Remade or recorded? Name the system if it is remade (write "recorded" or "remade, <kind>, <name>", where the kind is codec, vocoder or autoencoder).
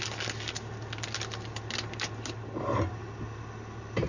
recorded